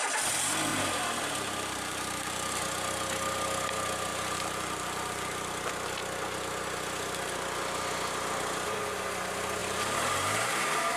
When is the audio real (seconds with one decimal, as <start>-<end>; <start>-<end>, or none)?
0.0-0.7; 2.6-4.1; 5.7-9.6